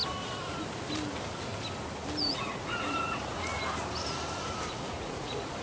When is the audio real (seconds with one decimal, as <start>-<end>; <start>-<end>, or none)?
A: 0.0-2.2; 3.5-4.7